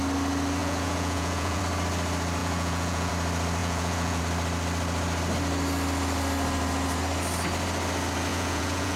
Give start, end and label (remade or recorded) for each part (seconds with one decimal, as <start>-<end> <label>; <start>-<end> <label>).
0.0-0.6 recorded; 0.6-1.6 remade; 1.6-2.4 recorded; 2.4-3.1 remade; 3.1-3.6 recorded; 3.6-4.2 remade; 4.2-8.3 recorded; 8.3-9.0 remade